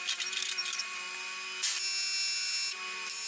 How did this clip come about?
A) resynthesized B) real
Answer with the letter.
B